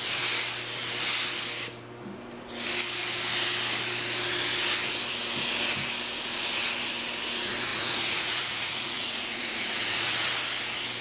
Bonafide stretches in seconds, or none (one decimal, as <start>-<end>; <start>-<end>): 0.0-7.7; 10.3-11.0